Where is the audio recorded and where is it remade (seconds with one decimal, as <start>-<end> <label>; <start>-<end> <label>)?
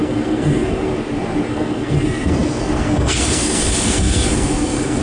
0.0-0.9 remade; 0.9-1.5 recorded; 1.5-5.0 remade